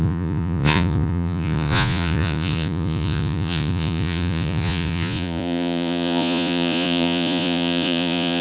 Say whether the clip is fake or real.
fake